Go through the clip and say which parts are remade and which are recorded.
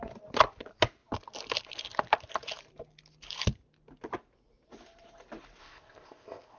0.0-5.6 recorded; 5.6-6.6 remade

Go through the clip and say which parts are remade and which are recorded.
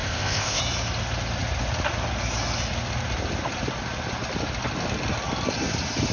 0.0-0.6 remade; 0.6-6.1 recorded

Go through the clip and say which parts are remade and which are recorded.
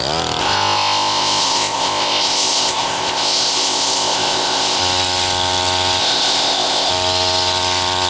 0.0-0.4 recorded; 0.4-4.8 remade; 4.8-6.0 recorded; 6.0-6.9 remade; 6.9-8.1 recorded